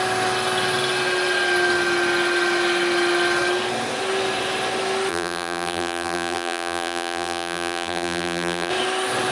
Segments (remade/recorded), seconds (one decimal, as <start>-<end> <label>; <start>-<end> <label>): 0.0-5.1 recorded; 5.1-8.7 remade; 8.7-9.3 recorded